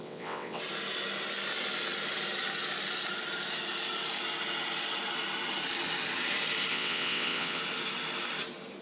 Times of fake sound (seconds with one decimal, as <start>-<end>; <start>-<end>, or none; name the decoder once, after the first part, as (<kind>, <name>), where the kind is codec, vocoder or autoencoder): 0.0-0.6 (vocoder, WaveNeXt); 6.7-7.6